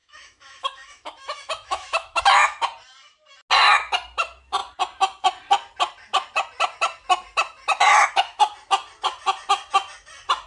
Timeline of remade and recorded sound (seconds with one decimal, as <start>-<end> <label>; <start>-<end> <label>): 0.0-2.2 remade; 2.2-10.5 recorded